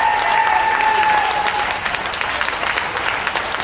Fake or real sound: real